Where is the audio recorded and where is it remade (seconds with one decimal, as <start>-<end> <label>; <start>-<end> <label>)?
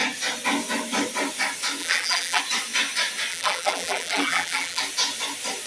0.0-1.8 recorded; 1.8-2.4 remade; 2.4-3.3 recorded; 3.3-4.8 remade; 4.8-5.7 recorded